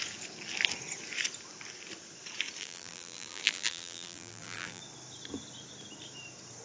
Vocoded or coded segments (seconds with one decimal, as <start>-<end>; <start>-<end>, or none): 2.6-4.8